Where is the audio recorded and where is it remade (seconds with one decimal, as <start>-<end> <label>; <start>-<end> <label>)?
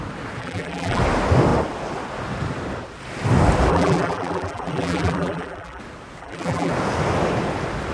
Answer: 0.0-0.4 recorded; 0.4-1.0 remade; 1.0-3.7 recorded; 3.7-5.8 remade; 5.8-6.2 recorded; 6.2-6.7 remade; 6.7-7.9 recorded